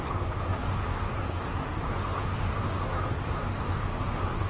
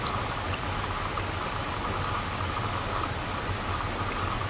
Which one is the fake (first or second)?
first